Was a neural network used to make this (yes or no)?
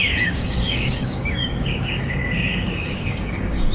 yes